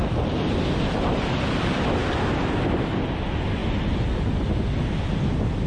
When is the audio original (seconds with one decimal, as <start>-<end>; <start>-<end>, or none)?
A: 0.0-5.7